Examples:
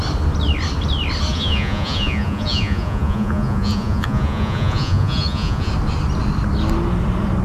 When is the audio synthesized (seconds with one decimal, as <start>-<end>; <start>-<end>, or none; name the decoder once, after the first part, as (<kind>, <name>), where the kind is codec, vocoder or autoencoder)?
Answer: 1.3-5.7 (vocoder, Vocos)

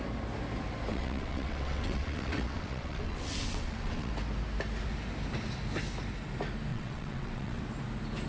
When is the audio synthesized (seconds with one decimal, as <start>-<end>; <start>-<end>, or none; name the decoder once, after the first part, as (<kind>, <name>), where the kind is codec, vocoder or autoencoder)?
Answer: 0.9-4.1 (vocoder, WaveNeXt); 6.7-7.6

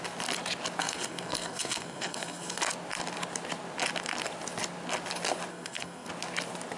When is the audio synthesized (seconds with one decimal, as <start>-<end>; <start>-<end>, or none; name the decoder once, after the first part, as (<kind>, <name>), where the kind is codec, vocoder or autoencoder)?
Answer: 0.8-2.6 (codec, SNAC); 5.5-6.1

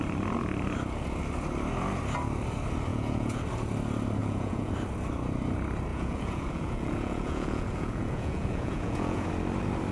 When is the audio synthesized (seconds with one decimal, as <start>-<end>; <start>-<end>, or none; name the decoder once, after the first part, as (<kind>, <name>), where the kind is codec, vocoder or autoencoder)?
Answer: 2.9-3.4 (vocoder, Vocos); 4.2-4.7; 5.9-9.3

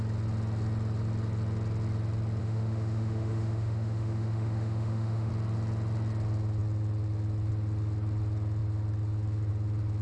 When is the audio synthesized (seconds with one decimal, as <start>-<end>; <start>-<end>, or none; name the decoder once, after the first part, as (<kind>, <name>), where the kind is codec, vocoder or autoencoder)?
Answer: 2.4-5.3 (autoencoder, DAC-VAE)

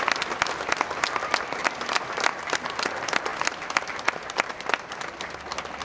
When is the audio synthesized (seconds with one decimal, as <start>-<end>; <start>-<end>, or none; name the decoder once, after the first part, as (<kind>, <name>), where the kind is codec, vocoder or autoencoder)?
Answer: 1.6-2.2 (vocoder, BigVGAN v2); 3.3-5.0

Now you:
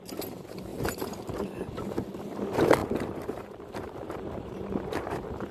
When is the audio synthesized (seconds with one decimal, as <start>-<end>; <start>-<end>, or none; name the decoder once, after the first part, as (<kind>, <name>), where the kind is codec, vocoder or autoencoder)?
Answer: 0.7-1.2 (vocoder, BigVGAN v2); 2.8-5.1